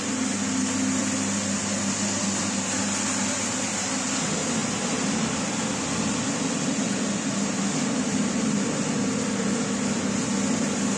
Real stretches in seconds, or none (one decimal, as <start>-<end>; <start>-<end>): 0.0-11.0